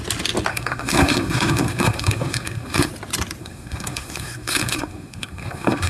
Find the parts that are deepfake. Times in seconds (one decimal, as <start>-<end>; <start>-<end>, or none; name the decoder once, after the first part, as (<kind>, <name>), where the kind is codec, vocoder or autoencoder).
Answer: 0.5-2.9 (codec, SNAC); 3.4-5.9